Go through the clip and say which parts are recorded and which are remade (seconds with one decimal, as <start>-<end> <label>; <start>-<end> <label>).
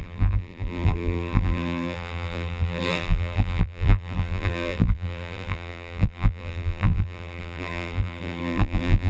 0.0-9.1 remade